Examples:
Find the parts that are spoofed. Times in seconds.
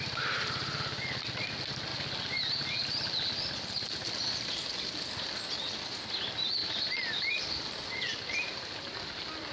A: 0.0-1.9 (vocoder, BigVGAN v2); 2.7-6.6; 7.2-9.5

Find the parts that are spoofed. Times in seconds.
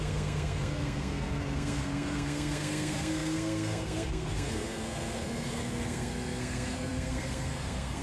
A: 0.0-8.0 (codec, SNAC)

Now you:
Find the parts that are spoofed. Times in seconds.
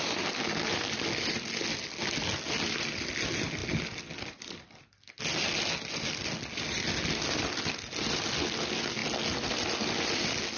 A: none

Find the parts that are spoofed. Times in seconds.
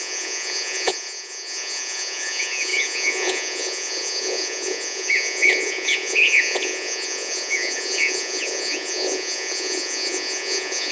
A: 0.0-10.9 (vocoder, Vocos)